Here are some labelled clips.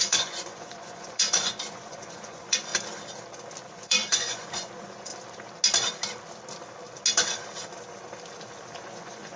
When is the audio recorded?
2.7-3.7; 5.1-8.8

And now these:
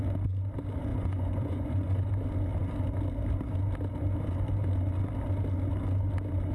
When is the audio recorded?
0.0-0.9; 2.1-6.5

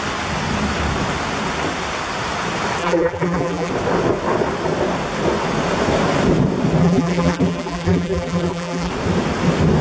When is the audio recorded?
0.0-2.8; 3.7-6.8; 8.9-9.8